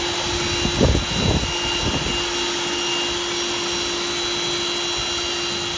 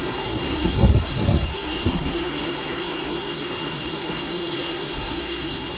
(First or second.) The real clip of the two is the first